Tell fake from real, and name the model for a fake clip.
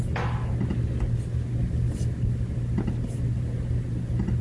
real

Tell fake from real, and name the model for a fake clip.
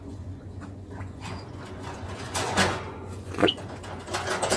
fake, vocoder, Vocos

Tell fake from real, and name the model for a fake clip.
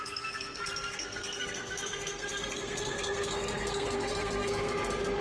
fake, codec, SNAC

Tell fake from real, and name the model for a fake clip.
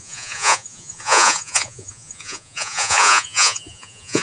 fake, vocoder, Vocos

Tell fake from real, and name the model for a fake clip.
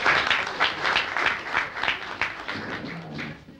real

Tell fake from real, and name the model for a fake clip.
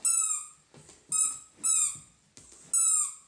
real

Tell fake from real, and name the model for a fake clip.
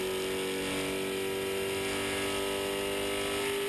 real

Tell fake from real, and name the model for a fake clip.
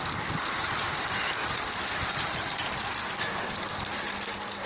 real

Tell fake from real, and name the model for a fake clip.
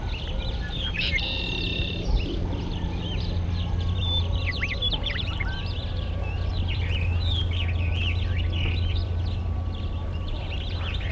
fake, vocoder, BigVGAN v2